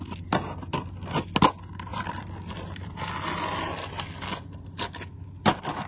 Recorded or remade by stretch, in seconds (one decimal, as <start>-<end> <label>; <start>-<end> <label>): 0.0-1.9 recorded; 1.9-3.0 remade; 3.0-5.9 recorded